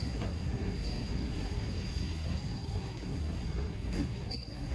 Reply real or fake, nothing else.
fake